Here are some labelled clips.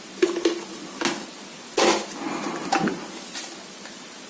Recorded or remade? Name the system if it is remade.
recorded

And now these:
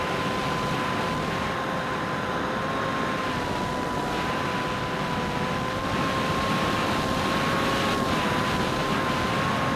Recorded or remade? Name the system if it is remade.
recorded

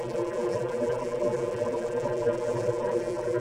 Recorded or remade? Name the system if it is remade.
remade, vocoder, BigVGAN v2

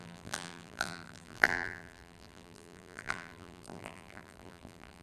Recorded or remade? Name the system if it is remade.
remade, vocoder, BigVGAN v2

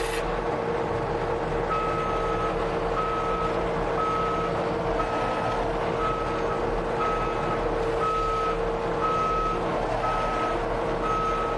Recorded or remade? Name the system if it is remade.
recorded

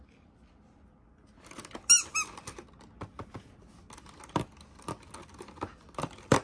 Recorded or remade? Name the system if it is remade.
recorded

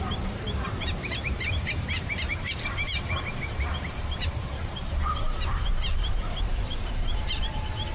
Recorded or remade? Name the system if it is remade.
remade, vocoder, BigVGAN v2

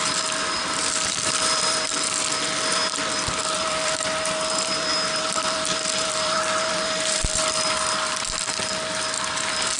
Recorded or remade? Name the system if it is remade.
remade, vocoder, BigVGAN v2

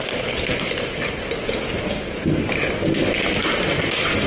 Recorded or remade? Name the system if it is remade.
recorded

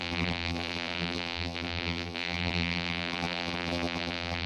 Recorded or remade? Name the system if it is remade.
remade, vocoder, BigVGAN v2